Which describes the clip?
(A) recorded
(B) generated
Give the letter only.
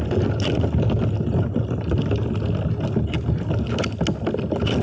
A